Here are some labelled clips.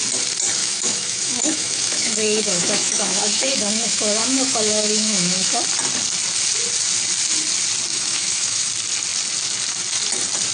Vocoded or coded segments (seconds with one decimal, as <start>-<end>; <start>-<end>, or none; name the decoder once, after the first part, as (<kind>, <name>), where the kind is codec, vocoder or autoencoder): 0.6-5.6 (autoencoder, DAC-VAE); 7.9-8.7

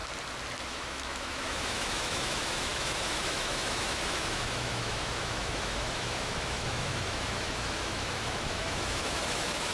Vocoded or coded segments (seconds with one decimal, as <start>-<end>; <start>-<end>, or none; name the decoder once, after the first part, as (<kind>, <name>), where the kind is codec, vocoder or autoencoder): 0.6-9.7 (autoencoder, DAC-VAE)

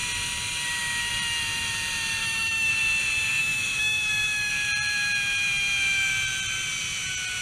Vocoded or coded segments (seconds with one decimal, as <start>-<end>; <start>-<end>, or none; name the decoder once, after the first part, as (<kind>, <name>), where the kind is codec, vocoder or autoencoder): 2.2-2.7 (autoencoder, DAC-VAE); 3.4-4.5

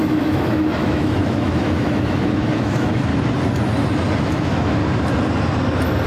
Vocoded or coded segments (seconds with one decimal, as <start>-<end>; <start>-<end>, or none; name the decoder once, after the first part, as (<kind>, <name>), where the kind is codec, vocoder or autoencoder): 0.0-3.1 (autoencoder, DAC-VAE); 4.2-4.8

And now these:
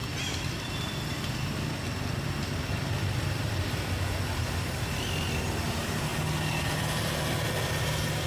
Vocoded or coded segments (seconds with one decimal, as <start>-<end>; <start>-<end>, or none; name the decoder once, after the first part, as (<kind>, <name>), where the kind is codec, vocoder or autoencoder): none

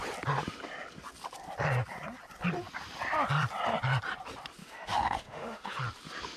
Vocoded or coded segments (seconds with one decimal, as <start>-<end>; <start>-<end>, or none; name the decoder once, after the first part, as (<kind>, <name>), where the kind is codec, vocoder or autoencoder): 4.6-5.8 (autoencoder, DAC-VAE)

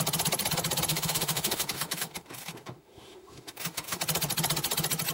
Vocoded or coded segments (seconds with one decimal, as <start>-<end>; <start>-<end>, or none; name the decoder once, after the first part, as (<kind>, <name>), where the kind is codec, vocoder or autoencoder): 0.9-4.0 (autoencoder, DAC-VAE)

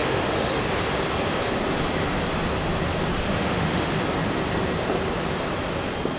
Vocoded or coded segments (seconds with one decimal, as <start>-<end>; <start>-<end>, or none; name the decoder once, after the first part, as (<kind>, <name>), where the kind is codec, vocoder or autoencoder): 0.0-0.6 (autoencoder, DAC-VAE); 3.1-4.0